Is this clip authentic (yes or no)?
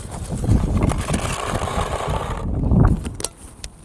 yes